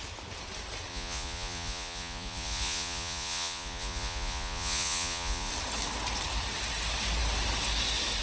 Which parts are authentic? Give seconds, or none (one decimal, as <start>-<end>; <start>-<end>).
0.0-0.9; 5.5-8.2